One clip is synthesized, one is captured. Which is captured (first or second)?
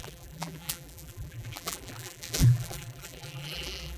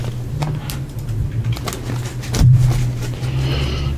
second